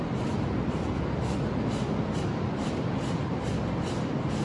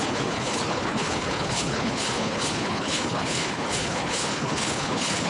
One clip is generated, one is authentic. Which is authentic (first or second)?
first